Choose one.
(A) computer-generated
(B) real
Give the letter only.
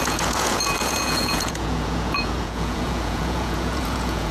A